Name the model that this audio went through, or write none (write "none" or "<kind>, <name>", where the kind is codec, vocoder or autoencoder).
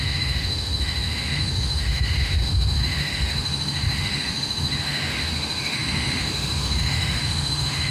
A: autoencoder, DAC-VAE